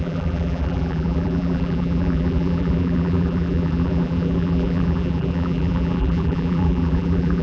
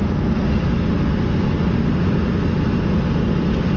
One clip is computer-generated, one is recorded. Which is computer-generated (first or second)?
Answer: first